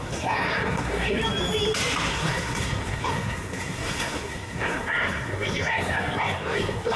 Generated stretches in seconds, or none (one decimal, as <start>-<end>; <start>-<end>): 0.0-1.2; 2.1-7.0

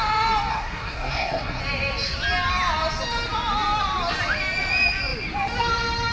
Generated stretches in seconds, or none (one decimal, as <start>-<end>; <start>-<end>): 0.5-1.6